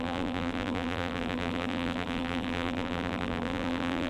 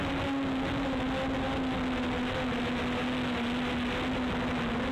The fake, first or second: first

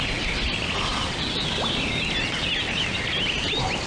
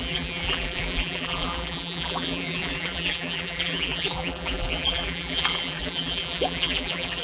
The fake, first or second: second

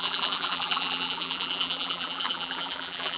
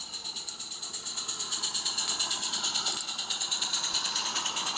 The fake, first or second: first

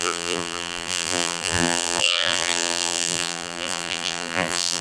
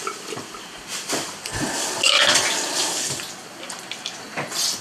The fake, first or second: first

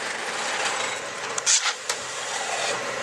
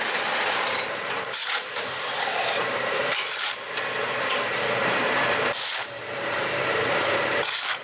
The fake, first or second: second